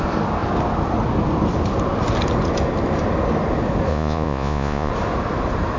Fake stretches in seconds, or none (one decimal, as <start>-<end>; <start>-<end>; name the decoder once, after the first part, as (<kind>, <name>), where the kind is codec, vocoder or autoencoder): 3.9-4.9 (vocoder, Vocos)

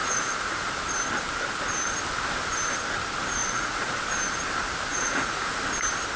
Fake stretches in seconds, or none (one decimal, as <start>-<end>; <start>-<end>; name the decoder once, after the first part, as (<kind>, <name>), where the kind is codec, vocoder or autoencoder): 0.0-0.7 (vocoder, Vocos); 3.4-4.0; 4.9-5.5

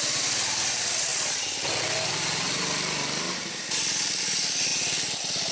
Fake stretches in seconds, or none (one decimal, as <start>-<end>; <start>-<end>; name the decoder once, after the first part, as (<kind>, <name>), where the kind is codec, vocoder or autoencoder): none

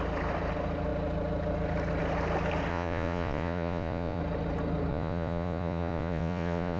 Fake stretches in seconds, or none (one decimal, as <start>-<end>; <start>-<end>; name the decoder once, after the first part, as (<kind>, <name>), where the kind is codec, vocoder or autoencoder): 2.7-4.2 (vocoder, Vocos); 4.9-6.8